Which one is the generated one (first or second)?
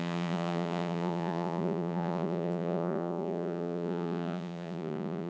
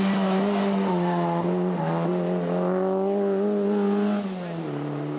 first